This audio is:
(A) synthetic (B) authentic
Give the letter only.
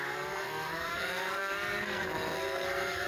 A